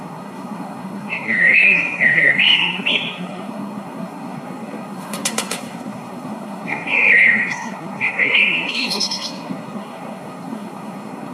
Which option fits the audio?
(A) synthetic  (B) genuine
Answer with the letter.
A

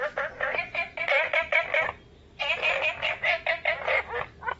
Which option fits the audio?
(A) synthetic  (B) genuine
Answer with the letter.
B